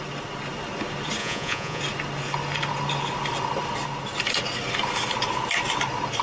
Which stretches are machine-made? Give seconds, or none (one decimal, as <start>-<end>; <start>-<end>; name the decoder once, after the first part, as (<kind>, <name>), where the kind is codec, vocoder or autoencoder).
1.2-1.8 (vocoder, Vocos)